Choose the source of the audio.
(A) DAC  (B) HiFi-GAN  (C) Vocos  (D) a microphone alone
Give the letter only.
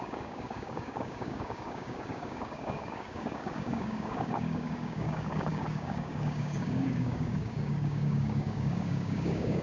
A